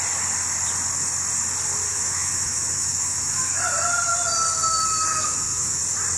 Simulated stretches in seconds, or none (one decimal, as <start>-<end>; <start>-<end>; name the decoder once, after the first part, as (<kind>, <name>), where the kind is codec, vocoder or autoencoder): 1.9-3.6 (autoencoder, DAC-VAE); 5.1-5.8